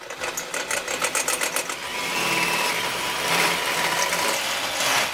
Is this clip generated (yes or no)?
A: no